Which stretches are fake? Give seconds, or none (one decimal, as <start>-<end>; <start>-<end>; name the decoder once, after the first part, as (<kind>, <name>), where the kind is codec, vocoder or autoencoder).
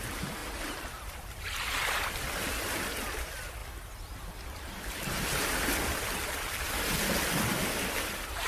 0.0-3.6 (vocoder, BigVGAN v2); 5.7-8.5